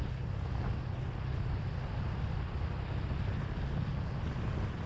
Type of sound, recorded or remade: recorded